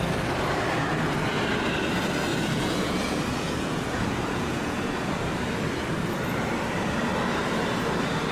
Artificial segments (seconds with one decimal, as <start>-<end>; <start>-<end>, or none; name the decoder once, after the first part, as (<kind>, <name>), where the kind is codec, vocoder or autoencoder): 2.3-5.1 (vocoder, Vocos)